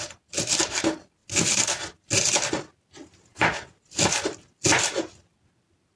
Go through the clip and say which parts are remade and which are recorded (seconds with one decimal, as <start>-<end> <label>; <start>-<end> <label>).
0.0-1.2 recorded; 1.2-2.2 remade; 2.2-3.3 recorded; 3.3-4.0 remade; 4.0-6.0 recorded